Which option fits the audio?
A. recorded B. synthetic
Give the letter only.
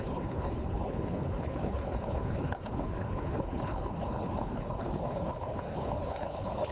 B